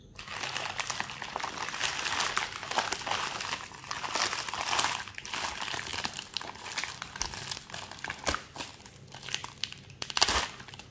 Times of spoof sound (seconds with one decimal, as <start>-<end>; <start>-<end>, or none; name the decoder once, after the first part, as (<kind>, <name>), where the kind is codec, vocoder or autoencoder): 5.9-7.0 (vocoder, BigVGAN v2)